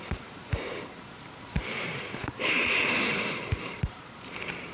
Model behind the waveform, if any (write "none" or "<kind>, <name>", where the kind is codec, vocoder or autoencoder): vocoder, BigVGAN v2